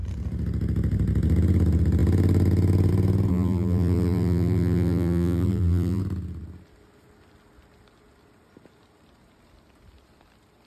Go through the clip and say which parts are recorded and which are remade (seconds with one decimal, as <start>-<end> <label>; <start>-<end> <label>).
0.0-3.3 recorded; 3.3-6.0 remade; 6.0-10.7 recorded